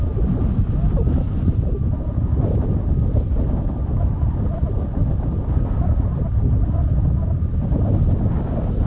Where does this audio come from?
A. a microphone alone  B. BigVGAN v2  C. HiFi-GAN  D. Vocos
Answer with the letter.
A